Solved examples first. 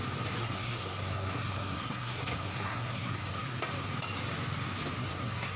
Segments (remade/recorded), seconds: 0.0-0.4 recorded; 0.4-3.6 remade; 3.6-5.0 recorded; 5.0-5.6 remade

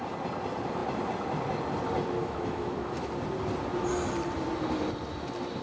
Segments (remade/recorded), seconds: 0.0-2.2 recorded; 2.2-3.1 remade; 3.1-5.6 recorded

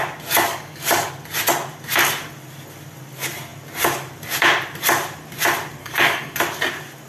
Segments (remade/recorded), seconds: 0.0-0.5 recorded; 0.5-1.1 remade; 1.1-5.8 recorded; 5.8-6.4 remade; 6.4-7.1 recorded

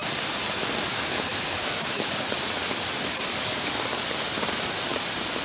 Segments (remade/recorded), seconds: 0.0-0.9 recorded; 0.9-2.1 remade; 2.1-5.4 recorded

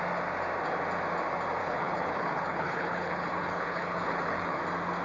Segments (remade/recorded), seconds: 0.0-1.6 recorded; 1.6-4.6 remade; 4.6-5.0 recorded